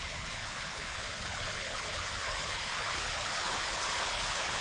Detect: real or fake fake